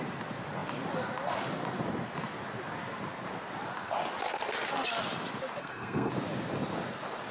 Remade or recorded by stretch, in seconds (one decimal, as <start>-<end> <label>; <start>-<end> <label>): 0.0-5.6 recorded; 5.6-6.1 remade; 6.1-7.3 recorded